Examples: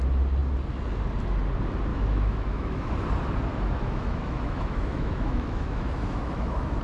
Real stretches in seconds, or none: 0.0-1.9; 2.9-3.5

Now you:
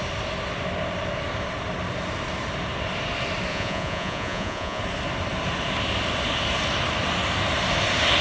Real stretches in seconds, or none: 0.0-3.5; 4.8-8.2